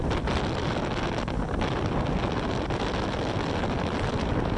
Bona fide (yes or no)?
yes